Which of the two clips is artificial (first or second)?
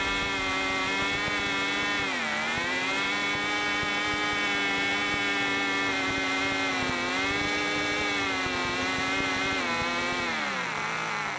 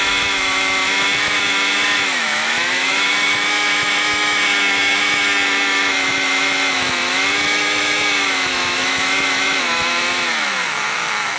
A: second